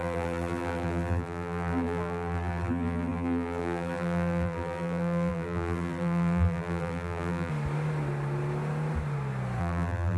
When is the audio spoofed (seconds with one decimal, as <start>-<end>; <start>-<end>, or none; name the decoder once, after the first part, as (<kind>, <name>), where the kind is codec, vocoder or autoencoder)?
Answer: 0.0-7.5 (vocoder, BigVGAN v2); 9.6-10.2